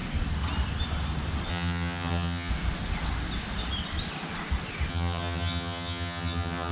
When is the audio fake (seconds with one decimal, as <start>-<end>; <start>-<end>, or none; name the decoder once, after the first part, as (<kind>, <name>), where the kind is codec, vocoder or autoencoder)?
1.5-2.5 (vocoder, HiFi-GAN); 4.9-6.7